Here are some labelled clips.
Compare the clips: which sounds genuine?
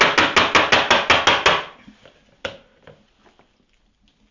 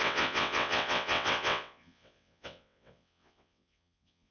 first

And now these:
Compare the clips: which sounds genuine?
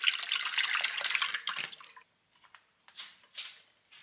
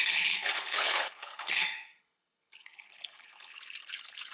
first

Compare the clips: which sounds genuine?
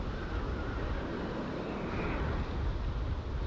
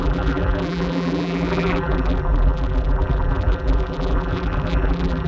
first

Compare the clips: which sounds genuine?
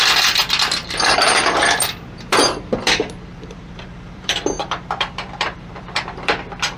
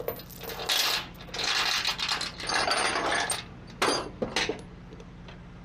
second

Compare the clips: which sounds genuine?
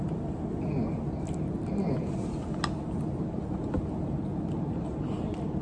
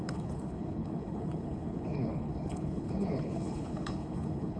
first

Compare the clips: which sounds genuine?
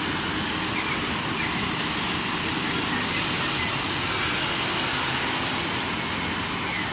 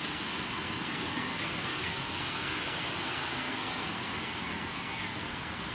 first